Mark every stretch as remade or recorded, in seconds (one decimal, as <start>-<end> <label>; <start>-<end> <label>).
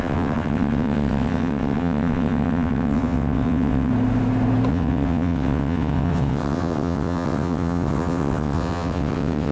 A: 0.0-3.9 remade; 3.9-4.7 recorded; 4.7-9.5 remade